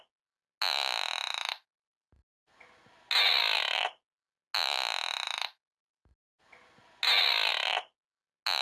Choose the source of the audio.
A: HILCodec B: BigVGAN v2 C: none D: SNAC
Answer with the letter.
C